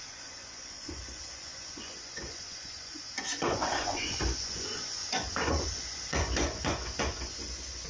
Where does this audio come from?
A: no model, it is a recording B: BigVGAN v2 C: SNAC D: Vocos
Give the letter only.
D